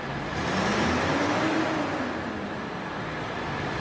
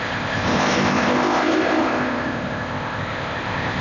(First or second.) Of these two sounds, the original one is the first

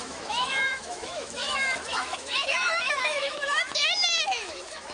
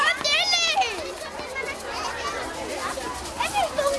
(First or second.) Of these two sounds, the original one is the second